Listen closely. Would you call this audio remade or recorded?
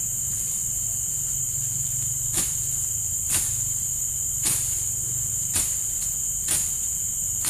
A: remade